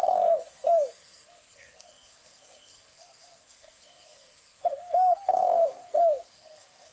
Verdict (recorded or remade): remade